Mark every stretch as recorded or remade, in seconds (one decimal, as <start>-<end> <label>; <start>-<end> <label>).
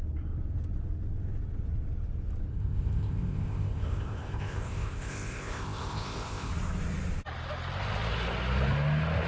0.0-2.5 recorded; 2.5-6.5 remade; 6.5-9.3 recorded